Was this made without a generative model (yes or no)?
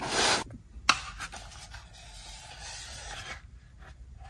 yes